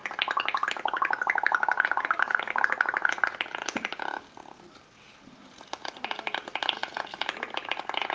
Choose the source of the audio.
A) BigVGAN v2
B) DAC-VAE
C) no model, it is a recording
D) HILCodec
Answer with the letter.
C